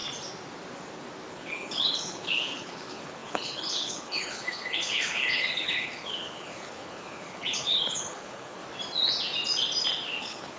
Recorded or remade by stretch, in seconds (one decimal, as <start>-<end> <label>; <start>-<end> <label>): 0.0-1.3 recorded; 1.3-8.6 remade; 8.6-10.2 recorded; 10.2-10.6 remade